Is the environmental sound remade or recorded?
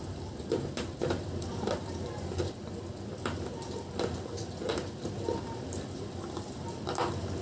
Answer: remade